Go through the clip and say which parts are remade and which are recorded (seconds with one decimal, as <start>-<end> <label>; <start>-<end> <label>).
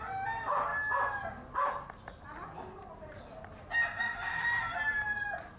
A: 0.0-5.6 recorded